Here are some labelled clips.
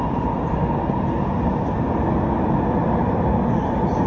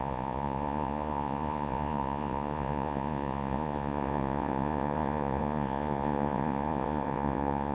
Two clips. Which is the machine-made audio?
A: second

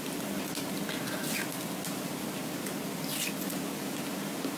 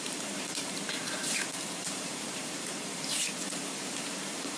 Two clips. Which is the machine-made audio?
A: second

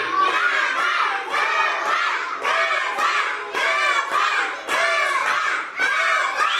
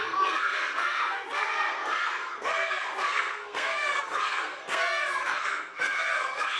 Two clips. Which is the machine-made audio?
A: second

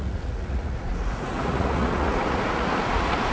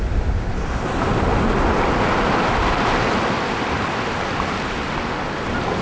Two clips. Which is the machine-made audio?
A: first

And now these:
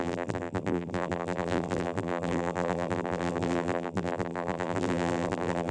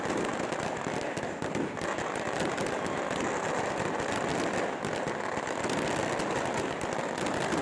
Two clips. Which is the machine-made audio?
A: first